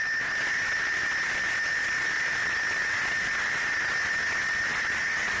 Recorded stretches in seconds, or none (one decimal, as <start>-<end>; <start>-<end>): 0.0-5.4